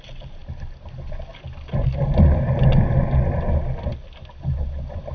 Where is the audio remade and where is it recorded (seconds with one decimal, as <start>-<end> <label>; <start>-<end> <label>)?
0.0-5.1 recorded